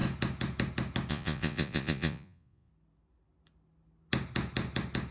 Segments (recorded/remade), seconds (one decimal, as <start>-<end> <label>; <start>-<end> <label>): 0.0-1.1 recorded; 1.1-2.7 remade; 2.7-5.1 recorded